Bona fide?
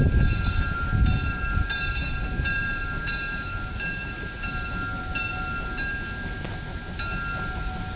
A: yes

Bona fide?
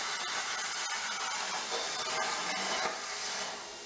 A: yes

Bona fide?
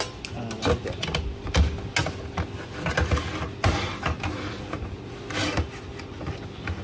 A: yes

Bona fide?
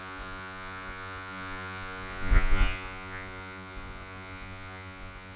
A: no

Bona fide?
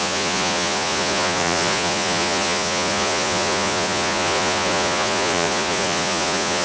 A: no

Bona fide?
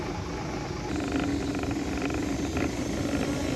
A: yes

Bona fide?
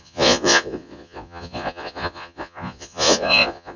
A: no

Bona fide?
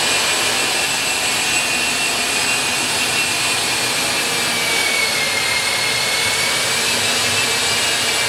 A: yes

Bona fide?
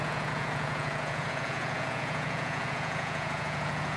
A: no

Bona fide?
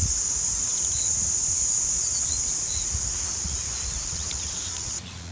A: no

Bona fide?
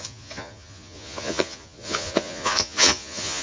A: no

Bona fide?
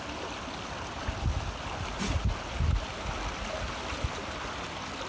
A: yes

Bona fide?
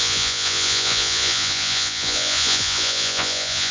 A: no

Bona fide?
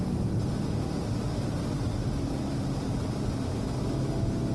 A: yes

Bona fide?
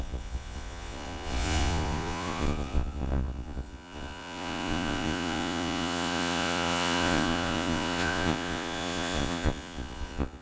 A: no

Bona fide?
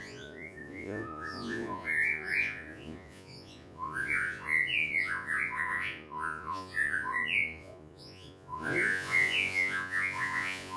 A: no